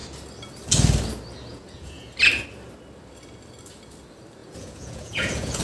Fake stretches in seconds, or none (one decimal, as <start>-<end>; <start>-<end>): 1.5-2.1; 4.4-5.6